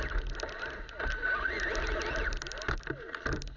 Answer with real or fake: real